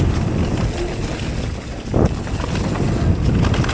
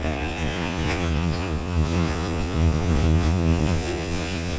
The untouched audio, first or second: first